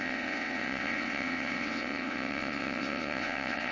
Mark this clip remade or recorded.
remade